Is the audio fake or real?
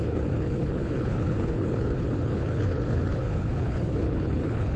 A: fake